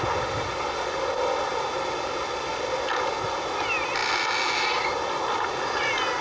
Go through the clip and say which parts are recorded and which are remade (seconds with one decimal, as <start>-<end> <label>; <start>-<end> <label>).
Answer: 0.0-6.2 recorded